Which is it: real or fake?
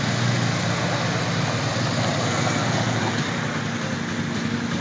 real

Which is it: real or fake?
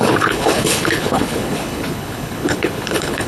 fake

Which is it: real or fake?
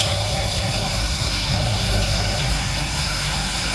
fake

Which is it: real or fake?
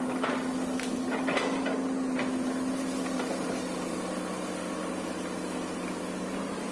real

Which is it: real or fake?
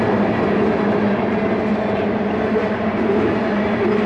real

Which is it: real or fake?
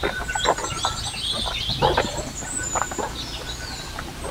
real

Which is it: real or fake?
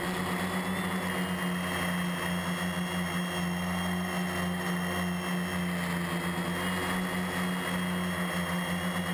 real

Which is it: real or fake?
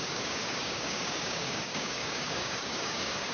fake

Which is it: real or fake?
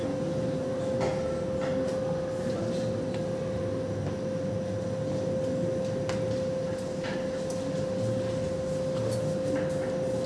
real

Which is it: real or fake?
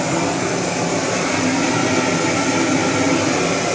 real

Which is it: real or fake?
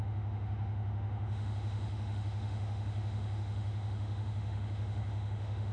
fake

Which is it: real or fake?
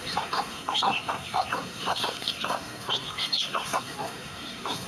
fake